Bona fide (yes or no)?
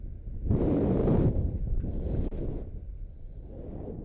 yes